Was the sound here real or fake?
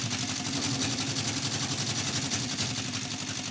real